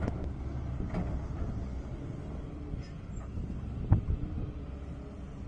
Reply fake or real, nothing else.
real